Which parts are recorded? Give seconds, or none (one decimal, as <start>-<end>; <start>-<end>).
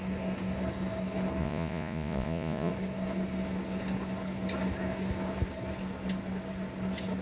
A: 0.0-1.4; 2.7-7.2